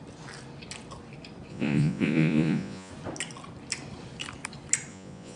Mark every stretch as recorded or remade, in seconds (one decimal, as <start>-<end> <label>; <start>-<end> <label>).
0.0-1.5 recorded; 1.5-2.9 remade; 2.9-4.9 recorded; 4.9-5.4 remade